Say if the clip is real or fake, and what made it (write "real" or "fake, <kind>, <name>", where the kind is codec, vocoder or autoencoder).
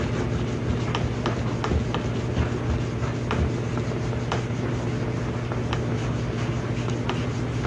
real